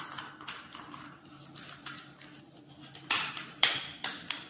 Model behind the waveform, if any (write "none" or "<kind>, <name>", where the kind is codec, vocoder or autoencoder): vocoder, BigVGAN v2